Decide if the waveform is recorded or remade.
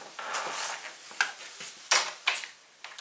recorded